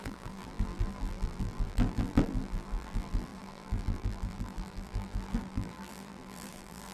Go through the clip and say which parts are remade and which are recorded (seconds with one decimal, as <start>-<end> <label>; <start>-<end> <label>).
0.0-6.9 remade